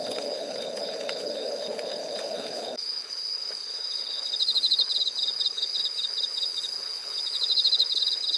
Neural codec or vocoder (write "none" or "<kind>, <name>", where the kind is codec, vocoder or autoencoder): codec, HILCodec